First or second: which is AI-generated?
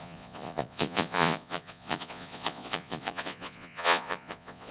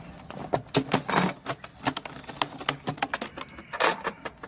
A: first